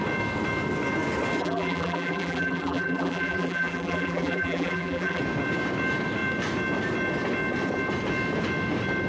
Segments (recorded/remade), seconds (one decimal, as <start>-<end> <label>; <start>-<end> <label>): 0.0-1.4 recorded; 1.4-5.2 remade; 5.2-9.1 recorded